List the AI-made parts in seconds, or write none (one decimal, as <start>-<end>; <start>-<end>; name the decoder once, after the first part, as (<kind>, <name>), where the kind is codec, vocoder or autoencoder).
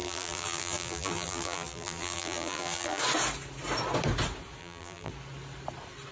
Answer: 0.0-3.0 (vocoder, BigVGAN v2); 4.6-5.1